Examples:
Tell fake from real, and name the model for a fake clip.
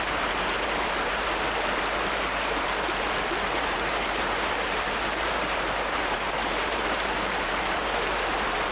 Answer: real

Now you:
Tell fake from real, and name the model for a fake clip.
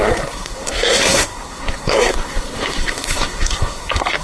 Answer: fake, codec, SNAC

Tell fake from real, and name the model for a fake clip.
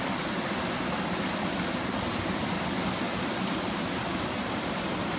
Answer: real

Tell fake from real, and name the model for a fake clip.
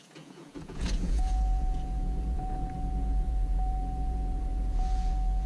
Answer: fake, vocoder, Vocos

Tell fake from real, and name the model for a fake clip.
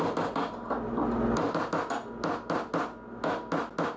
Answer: real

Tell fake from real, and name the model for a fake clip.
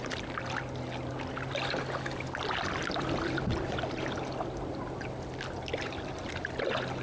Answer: real